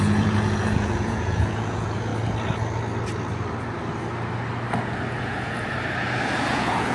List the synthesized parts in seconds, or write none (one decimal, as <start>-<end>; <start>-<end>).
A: 0.0-2.1; 5.2-5.7; 6.5-6.9